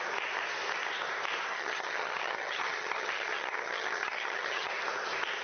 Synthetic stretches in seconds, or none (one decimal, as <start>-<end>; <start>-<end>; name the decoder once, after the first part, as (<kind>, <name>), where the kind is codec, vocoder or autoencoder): 1.5-4.7 (vocoder, HiFi-GAN)